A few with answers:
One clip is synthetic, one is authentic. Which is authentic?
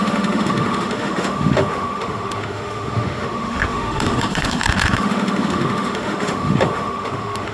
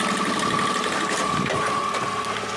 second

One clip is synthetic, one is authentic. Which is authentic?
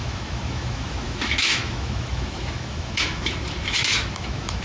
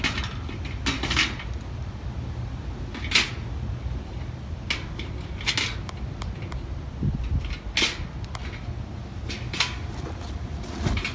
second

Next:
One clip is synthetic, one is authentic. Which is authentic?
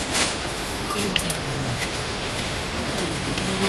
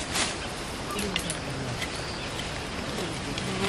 second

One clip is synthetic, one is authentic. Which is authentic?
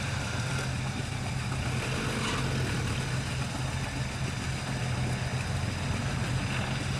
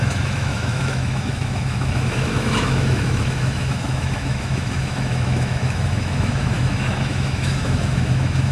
first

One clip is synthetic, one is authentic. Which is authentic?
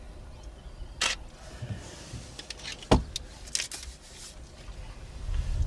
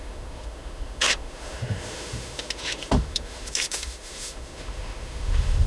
first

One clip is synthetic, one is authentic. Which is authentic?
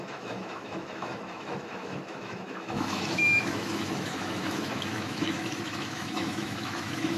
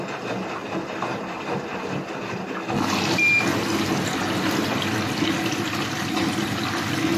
second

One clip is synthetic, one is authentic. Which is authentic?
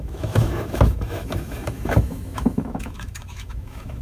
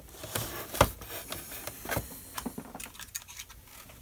second